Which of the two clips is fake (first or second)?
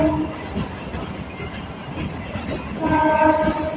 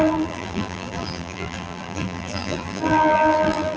second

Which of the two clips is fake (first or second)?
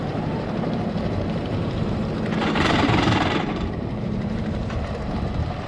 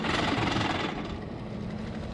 first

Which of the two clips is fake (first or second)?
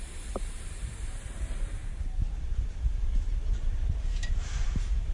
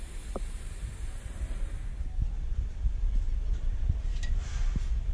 first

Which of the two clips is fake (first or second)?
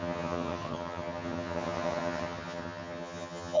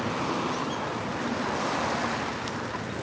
first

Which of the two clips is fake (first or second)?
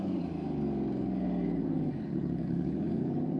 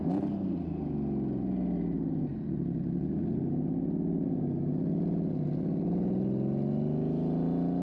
first